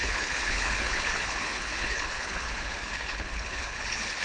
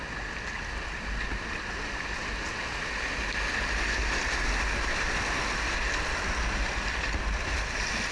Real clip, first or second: second